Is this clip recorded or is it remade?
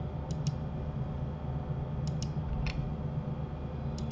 recorded